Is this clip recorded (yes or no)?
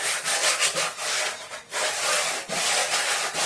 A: yes